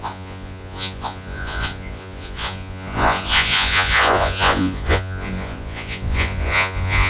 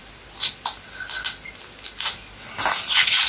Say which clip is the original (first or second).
second